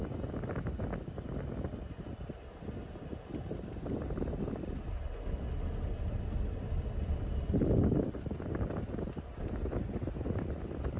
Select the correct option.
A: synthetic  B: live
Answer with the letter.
B